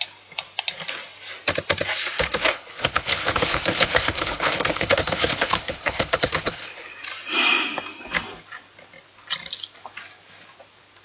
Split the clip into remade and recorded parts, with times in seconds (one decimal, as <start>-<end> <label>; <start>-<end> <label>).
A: 0.0-2.5 recorded; 2.5-6.9 remade; 6.9-11.0 recorded